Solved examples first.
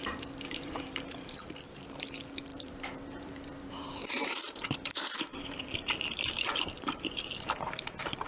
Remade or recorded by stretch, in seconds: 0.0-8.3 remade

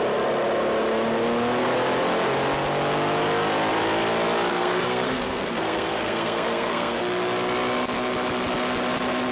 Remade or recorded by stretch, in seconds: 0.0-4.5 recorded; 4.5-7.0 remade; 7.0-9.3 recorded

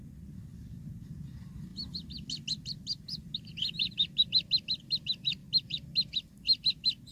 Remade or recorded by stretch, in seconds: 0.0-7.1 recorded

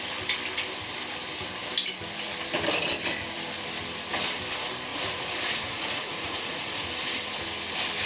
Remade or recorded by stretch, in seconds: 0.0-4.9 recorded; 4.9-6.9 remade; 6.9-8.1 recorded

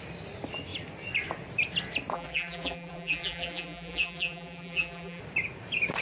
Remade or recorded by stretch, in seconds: 0.0-2.1 recorded; 2.1-5.2 remade; 5.2-6.0 recorded

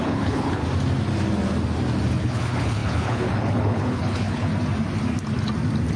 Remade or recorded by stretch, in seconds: 0.0-0.6 remade; 0.6-2.2 recorded; 2.2-4.5 remade; 4.5-6.0 recorded

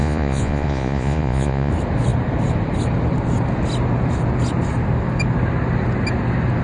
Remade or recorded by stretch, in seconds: 0.0-1.7 remade; 1.7-6.6 recorded